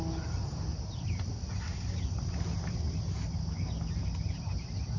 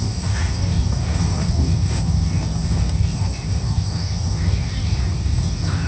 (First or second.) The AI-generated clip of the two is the second